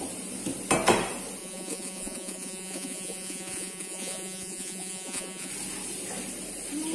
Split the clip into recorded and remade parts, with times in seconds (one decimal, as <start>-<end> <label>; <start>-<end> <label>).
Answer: 0.0-1.4 recorded; 1.4-5.5 remade; 5.5-6.9 recorded